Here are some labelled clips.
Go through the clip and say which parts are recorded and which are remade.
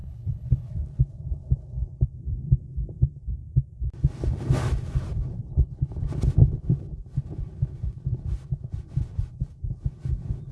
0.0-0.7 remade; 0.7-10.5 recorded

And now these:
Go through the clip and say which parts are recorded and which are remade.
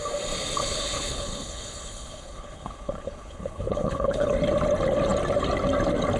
0.0-0.6 recorded; 0.6-4.3 remade; 4.3-6.2 recorded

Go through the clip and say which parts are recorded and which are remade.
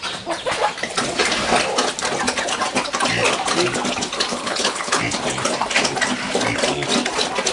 0.0-4.3 recorded; 4.3-5.0 remade; 5.0-7.5 recorded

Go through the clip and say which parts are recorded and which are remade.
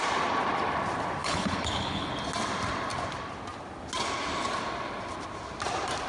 0.0-1.2 recorded; 1.2-2.1 remade; 2.1-6.1 recorded